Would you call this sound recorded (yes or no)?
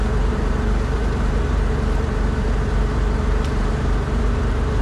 no